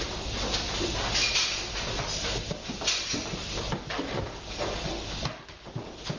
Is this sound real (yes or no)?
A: yes